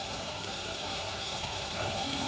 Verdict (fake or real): fake